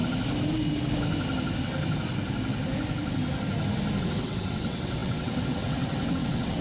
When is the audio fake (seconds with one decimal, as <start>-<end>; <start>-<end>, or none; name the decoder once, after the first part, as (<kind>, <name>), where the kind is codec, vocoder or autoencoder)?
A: 4.0-6.6 (vocoder, WaveNeXt)